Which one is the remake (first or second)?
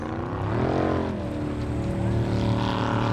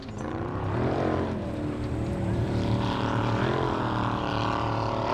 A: second